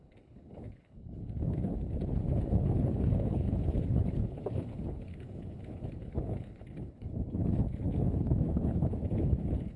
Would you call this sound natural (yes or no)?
no